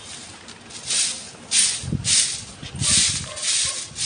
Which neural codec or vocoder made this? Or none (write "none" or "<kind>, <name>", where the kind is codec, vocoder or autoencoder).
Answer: none